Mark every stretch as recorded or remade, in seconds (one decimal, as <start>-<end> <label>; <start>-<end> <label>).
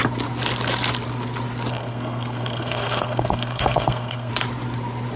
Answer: 0.0-1.7 recorded; 1.7-4.3 remade; 4.3-5.2 recorded